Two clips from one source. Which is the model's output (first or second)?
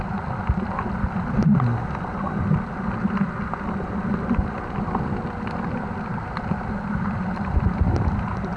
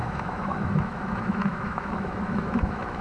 second